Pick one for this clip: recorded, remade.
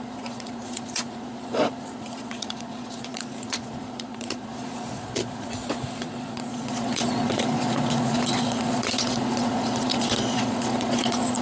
remade